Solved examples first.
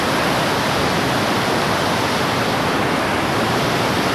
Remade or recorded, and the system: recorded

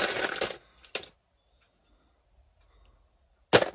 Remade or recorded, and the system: recorded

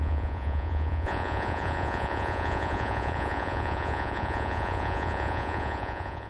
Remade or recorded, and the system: remade, vocoder, Vocos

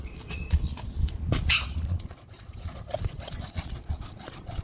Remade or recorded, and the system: remade, vocoder, Vocos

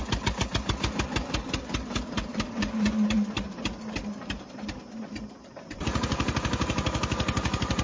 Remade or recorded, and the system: remade, vocoder, BigVGAN v2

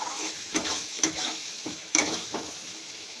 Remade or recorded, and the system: remade, autoencoder, DAC-VAE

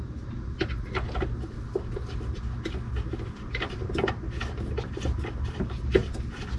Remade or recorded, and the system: recorded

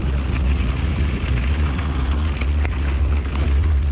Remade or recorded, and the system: remade, vocoder, Vocos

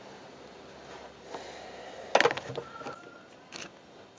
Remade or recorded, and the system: recorded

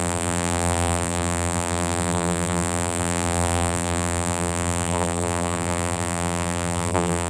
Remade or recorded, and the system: remade, vocoder, BigVGAN v2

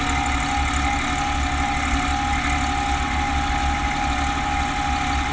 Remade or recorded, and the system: recorded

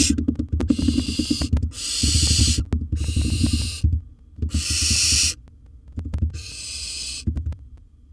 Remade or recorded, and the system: recorded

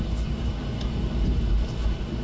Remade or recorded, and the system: recorded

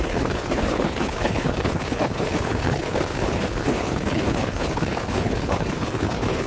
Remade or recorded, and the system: remade, codec, HILCodec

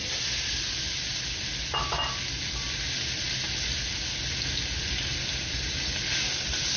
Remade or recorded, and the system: recorded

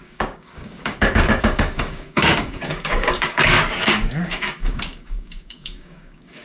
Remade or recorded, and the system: remade, codec, DAC